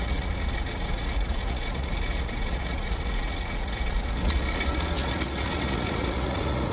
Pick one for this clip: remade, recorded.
remade